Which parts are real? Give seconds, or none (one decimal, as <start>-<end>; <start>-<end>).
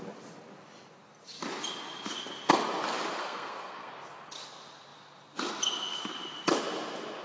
0.0-3.2; 3.9-7.2